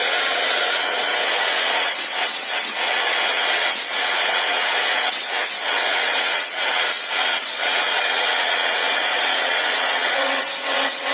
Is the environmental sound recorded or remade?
remade